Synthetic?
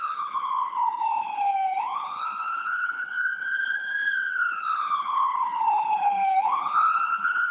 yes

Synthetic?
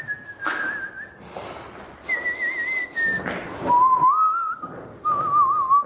no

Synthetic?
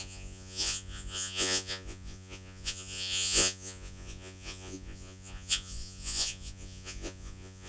yes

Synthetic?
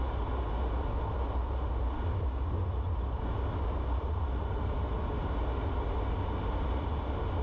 no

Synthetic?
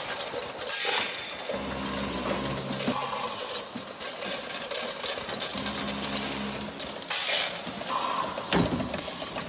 no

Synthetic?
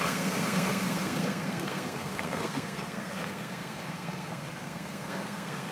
yes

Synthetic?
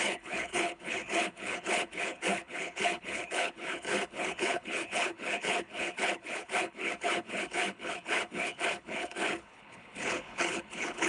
yes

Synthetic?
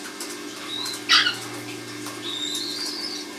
no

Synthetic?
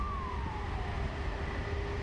no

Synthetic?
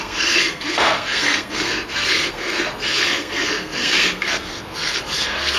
yes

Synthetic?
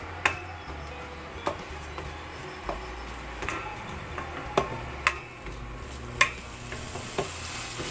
no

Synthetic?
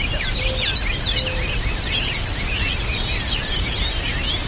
no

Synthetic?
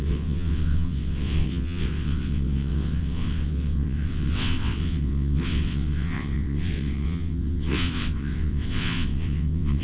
yes